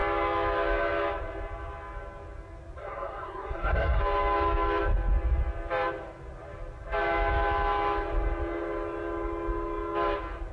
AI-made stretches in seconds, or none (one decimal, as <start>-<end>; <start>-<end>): 2.8-4.0